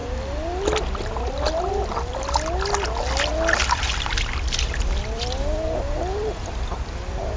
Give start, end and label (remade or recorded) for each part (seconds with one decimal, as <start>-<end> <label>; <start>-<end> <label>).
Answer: 0.0-7.4 recorded